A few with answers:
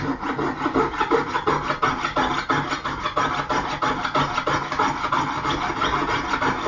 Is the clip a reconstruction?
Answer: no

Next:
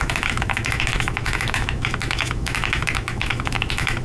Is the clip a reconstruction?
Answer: yes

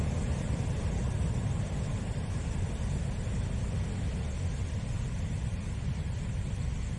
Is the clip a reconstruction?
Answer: no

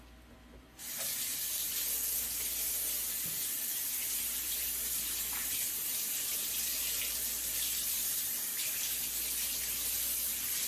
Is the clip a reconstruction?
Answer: no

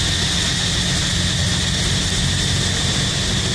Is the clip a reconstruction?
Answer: no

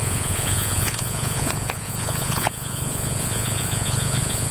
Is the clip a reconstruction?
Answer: yes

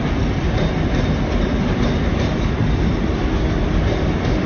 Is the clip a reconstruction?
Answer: no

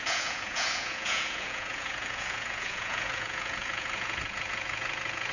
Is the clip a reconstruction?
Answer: yes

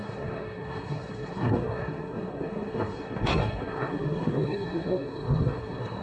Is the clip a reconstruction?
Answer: yes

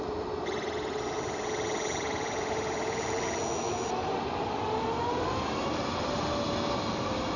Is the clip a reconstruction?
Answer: no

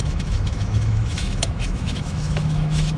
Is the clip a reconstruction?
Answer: yes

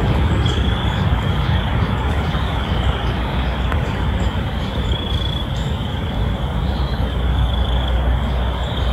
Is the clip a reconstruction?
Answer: yes